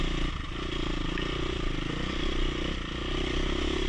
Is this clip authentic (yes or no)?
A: yes